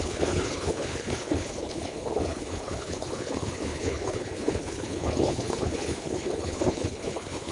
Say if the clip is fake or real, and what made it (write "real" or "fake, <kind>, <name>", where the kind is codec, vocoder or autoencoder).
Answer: fake, codec, HILCodec